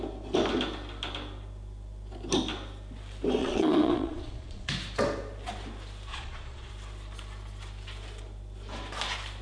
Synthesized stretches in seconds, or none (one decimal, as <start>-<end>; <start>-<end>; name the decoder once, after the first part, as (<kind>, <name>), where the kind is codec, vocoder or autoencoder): 3.4-4.7 (vocoder, Vocos); 6.1-6.7

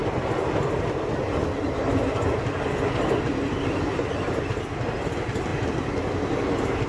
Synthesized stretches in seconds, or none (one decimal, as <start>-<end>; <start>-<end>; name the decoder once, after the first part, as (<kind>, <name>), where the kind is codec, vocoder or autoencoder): none

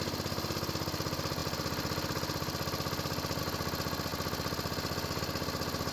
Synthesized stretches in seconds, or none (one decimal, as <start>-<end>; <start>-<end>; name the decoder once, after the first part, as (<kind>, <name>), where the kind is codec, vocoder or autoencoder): none

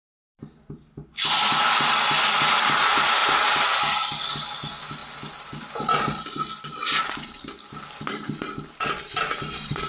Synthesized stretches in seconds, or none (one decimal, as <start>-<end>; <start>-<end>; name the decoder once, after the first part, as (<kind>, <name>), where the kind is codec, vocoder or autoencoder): 0.0-3.2 (vocoder, BigVGAN v2); 4.2-9.9

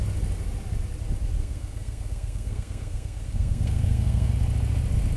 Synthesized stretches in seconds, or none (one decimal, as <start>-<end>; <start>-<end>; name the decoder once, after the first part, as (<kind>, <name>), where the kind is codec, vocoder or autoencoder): 1.4-4.3 (codec, SNAC)

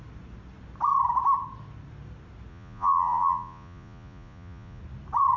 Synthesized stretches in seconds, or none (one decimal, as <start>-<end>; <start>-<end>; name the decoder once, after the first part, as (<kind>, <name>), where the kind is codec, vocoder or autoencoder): 2.5-4.8 (vocoder, Vocos)

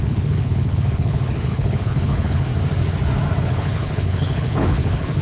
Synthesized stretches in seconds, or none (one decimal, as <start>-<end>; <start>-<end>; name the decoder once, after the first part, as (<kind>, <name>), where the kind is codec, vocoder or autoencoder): 0.0-2.5 (codec, HILCodec); 3.4-5.2